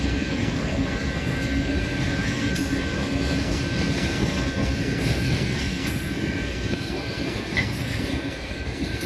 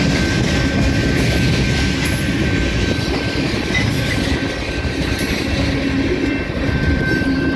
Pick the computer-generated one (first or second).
first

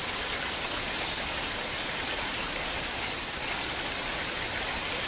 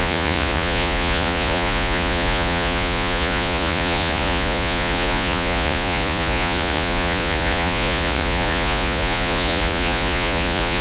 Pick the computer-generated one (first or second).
second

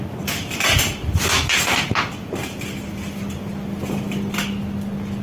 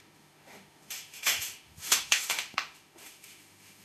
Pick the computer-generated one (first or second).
second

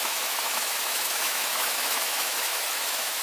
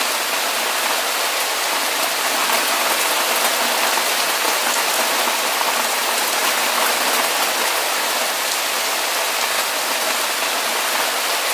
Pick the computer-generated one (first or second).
first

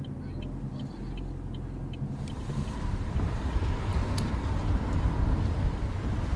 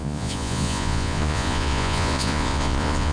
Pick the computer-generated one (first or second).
second